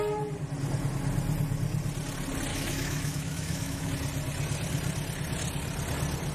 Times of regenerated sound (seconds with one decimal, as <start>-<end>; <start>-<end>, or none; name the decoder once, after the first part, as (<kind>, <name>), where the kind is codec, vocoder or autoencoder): 2.5-3.9 (autoencoder, DAC-VAE)

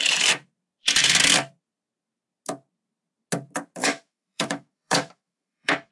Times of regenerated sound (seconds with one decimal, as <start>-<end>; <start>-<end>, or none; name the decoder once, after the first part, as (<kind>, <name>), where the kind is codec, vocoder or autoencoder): 3.8-5.9 (autoencoder, DAC-VAE)

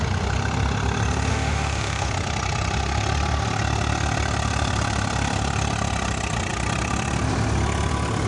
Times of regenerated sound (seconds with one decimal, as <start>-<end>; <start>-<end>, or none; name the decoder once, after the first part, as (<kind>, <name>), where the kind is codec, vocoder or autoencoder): 1.3-2.1 (autoencoder, DAC-VAE)

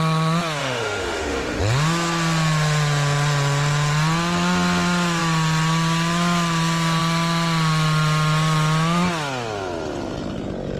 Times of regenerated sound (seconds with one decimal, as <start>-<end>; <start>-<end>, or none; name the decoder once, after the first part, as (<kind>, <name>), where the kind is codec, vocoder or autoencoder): 0.6-1.6 (autoencoder, DAC-VAE)

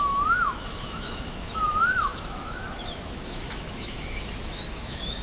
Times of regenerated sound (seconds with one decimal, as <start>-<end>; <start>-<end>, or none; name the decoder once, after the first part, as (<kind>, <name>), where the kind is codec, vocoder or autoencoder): 0.0-5.2 (autoencoder, DAC-VAE)

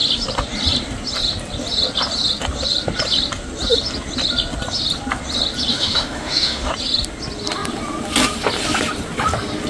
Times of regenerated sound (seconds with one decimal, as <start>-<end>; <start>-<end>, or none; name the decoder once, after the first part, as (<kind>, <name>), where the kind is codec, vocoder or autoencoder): 5.7-6.7 (autoencoder, DAC-VAE)

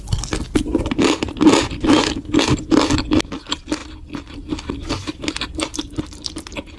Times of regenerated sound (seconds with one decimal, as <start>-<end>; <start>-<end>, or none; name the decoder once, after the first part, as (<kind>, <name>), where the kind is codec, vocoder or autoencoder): none